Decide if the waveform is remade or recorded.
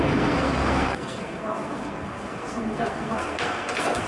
remade